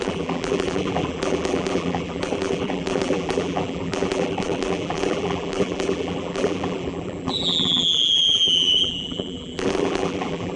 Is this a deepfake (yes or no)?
yes